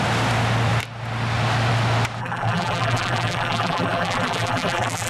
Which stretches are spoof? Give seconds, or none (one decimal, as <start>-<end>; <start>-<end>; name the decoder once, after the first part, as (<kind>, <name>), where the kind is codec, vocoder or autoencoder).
2.2-5.1 (vocoder, BigVGAN v2)